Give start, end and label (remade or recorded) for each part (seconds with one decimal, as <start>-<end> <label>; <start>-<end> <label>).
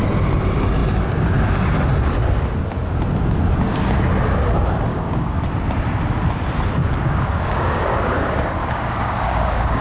0.0-4.9 recorded; 4.9-5.5 remade; 5.5-6.8 recorded; 6.8-7.9 remade; 7.9-8.6 recorded; 8.6-9.8 remade